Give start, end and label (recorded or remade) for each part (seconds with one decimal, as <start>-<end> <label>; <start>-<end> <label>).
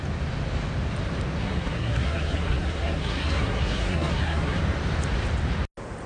0.0-1.4 recorded; 1.4-4.6 remade; 4.6-6.1 recorded